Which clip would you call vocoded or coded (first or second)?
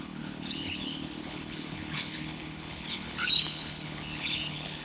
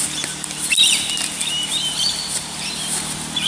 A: first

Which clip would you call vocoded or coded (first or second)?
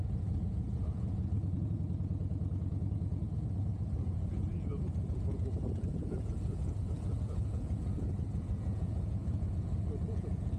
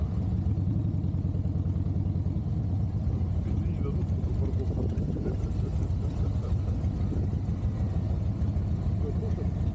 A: first